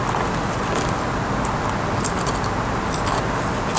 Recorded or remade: recorded